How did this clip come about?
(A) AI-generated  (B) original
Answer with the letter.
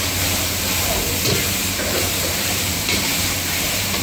A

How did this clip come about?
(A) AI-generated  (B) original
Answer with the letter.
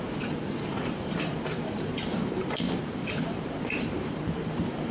A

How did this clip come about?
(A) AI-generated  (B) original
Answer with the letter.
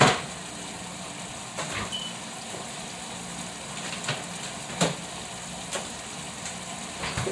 A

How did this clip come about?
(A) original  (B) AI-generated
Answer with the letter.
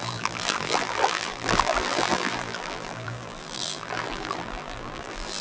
B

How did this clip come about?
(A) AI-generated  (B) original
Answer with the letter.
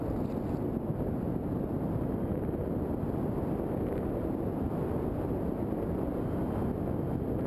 B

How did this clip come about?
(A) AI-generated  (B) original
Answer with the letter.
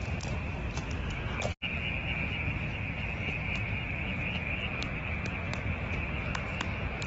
B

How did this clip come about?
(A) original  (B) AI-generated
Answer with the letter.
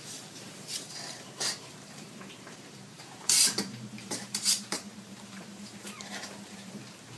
B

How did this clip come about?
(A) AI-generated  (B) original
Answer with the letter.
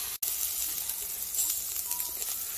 B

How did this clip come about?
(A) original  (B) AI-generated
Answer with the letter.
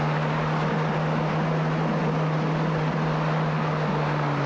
A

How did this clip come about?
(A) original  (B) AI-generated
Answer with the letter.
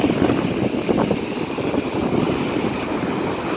A